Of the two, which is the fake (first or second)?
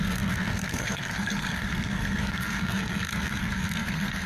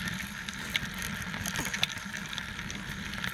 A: first